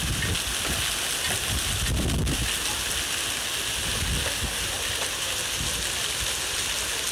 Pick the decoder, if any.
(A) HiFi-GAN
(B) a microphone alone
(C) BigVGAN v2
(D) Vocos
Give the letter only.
B